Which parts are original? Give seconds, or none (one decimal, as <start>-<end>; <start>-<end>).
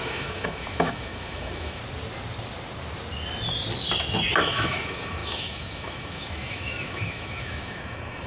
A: 1.8-4.4